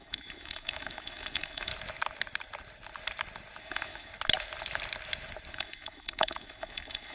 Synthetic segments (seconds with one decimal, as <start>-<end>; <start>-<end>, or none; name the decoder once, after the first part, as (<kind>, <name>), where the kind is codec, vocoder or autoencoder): 0.0-1.7 (autoencoder, DAC-VAE); 3.6-4.1; 5.5-7.1